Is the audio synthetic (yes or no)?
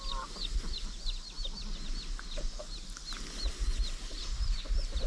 no